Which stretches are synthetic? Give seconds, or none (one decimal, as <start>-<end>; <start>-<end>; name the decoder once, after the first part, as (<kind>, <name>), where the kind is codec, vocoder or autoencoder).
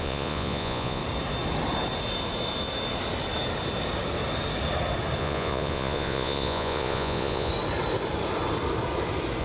0.0-1.0 (vocoder, Vocos); 5.2-7.5